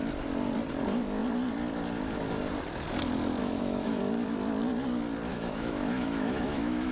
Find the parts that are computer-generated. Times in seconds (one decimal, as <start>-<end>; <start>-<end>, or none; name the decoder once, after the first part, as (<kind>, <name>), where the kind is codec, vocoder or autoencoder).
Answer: 3.4-4.0 (autoencoder, DAC-VAE); 5.3-6.9